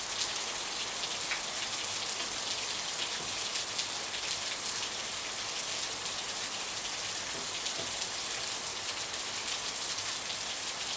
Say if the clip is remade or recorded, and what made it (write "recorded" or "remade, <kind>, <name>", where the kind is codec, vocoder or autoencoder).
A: recorded